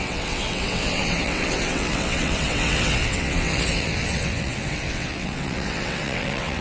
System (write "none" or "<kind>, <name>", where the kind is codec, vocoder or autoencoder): vocoder, WaveNeXt